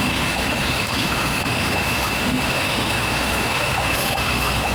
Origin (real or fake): fake